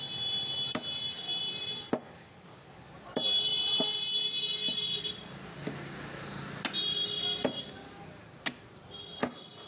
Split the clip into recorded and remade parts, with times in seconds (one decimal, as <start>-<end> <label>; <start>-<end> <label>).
0.0-9.7 recorded